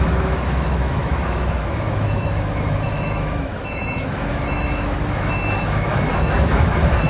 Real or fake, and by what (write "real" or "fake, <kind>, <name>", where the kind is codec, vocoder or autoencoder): fake, autoencoder, DAC-VAE